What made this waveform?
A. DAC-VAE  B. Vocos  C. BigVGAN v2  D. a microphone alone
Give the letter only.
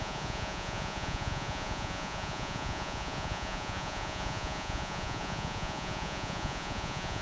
B